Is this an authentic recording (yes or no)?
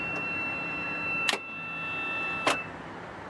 yes